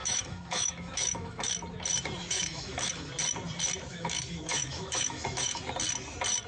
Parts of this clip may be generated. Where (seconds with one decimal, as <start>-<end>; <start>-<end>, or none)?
0.0-1.5; 2.2-3.1; 3.9-5.6